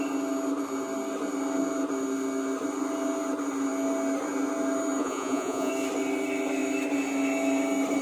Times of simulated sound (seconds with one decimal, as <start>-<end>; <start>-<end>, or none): 5.0-5.7

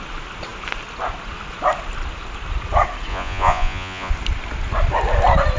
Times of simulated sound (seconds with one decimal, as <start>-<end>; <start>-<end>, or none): 3.1-4.1

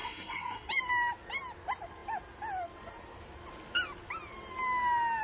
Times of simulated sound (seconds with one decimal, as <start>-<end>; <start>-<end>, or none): 0.0-0.7